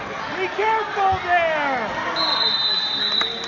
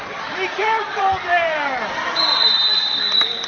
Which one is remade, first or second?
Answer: second